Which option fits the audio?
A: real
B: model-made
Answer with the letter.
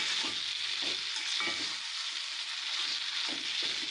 A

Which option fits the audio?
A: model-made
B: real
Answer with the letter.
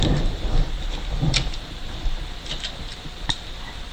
A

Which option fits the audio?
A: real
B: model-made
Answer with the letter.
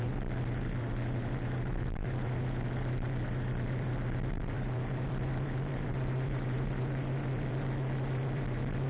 B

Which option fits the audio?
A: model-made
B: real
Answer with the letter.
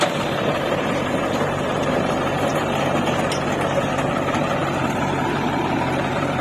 A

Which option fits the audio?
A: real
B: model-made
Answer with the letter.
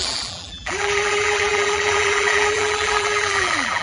B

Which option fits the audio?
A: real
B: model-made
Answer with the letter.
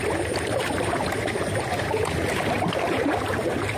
B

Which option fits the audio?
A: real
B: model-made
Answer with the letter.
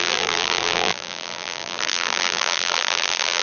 B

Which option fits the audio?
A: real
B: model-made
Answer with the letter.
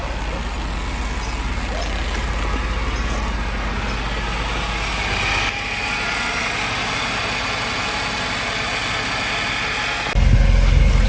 A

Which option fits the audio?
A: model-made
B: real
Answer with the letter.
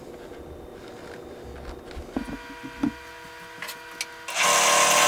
B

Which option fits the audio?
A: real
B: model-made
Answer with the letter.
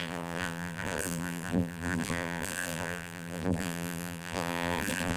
B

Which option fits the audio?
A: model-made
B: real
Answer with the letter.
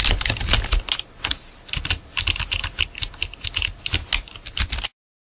B